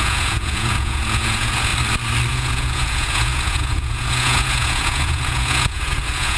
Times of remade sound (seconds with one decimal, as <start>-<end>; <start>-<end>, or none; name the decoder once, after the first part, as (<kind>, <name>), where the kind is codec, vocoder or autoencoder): 0.0-1.7 (vocoder, Vocos); 2.3-6.4